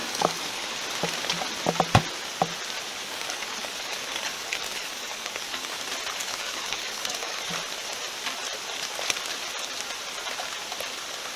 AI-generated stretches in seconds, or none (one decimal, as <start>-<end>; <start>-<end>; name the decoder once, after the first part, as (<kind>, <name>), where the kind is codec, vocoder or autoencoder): 0.0-0.8 (codec, DAC); 3.0-5.8; 6.2-7.5